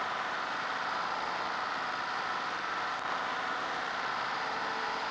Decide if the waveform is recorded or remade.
recorded